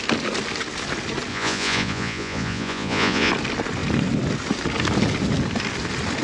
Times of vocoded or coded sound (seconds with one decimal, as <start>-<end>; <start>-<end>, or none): 1.3-3.3